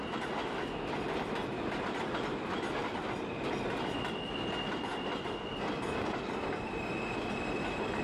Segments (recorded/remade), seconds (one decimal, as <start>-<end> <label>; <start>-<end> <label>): 0.0-8.0 recorded

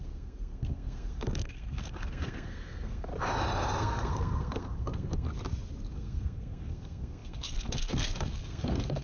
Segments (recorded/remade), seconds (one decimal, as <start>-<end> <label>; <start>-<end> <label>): 0.0-3.1 remade; 3.1-3.8 recorded; 3.8-5.3 remade; 5.3-5.9 recorded; 5.9-9.0 remade

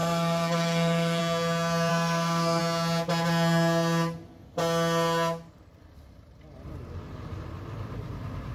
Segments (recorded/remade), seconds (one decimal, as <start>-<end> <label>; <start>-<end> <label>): 0.0-1.2 remade; 1.2-1.9 recorded; 1.9-2.6 remade; 2.6-8.5 recorded

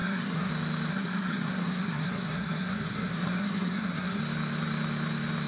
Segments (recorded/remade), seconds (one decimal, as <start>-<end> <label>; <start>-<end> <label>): 0.0-0.5 remade; 0.5-0.9 recorded; 0.9-4.2 remade; 4.2-5.5 recorded

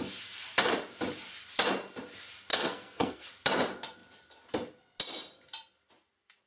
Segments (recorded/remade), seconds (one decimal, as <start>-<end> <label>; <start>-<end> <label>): 0.0-2.5 recorded; 2.5-3.3 remade; 3.3-6.5 recorded

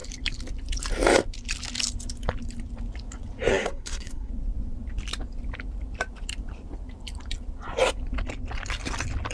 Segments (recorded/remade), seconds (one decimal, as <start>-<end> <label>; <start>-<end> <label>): 0.0-3.5 recorded; 3.5-4.3 remade; 4.3-9.3 recorded

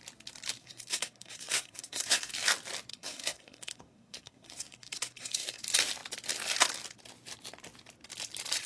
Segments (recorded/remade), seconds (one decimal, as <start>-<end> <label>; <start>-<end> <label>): 0.0-0.6 recorded; 0.6-2.3 remade; 2.3-2.9 recorded; 2.9-5.6 remade; 5.6-8.7 recorded